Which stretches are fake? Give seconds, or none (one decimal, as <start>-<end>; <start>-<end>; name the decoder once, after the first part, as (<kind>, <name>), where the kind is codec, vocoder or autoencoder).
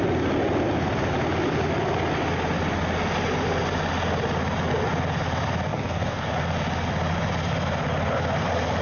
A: 5.7-6.3 (codec, DAC)